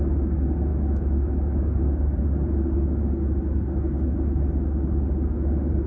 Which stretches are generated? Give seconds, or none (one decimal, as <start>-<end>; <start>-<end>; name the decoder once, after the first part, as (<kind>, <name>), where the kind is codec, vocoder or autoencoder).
0.7-1.8 (autoencoder, DAC-VAE)